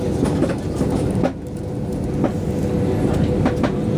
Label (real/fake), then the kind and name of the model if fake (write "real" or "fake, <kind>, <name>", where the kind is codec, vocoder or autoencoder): real